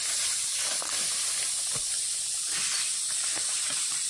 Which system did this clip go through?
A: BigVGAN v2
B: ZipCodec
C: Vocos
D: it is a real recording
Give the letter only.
D